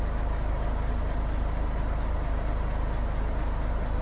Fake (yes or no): no